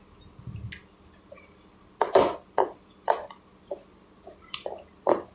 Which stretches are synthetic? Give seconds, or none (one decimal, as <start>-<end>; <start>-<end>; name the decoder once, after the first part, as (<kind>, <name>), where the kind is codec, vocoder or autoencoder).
0.8-4.0 (vocoder, BigVGAN v2)